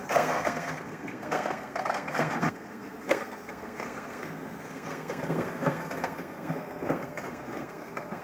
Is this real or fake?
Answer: fake